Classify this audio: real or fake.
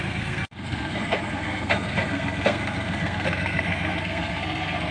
fake